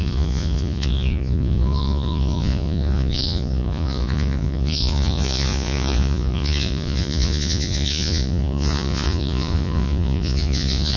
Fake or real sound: fake